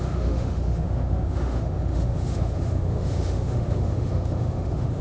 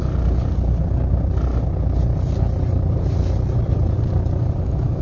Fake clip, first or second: first